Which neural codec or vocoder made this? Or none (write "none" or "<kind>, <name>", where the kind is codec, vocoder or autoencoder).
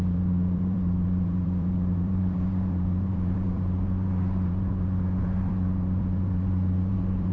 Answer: vocoder, BigVGAN v2